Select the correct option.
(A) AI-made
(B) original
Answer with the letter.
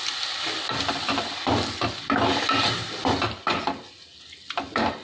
B